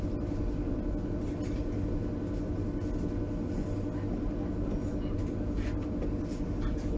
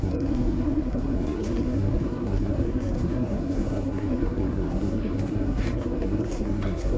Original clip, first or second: first